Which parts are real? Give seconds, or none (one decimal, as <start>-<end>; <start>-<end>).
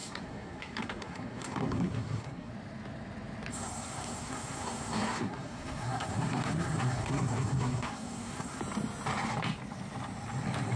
2.5-3.5; 8.6-10.8